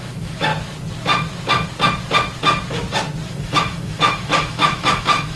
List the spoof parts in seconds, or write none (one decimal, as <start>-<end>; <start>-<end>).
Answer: 0.0-0.5; 3.3-5.4